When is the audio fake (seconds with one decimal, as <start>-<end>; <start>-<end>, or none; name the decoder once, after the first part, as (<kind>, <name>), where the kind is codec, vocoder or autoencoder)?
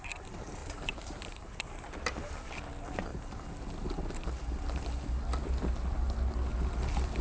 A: 0.6-2.5 (vocoder, BigVGAN v2)